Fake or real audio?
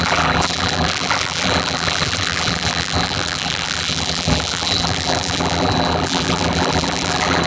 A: fake